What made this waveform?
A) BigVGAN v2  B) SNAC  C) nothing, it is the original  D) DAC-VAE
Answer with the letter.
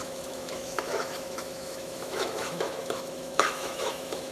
D